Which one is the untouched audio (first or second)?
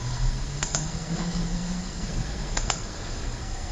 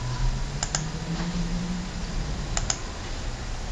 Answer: second